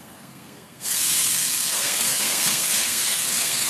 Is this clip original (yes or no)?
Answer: no